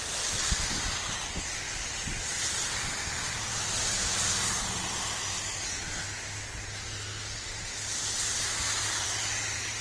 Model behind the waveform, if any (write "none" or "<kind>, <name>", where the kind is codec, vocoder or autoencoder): none